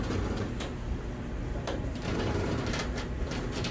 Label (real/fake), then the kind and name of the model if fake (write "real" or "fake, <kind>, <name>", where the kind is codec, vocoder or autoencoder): fake, vocoder, BigVGAN v2